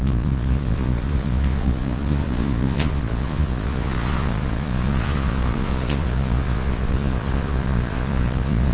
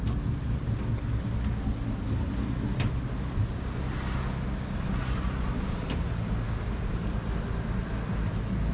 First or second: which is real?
second